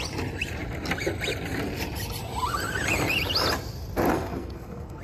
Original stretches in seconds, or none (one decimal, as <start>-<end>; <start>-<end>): 0.0-4.1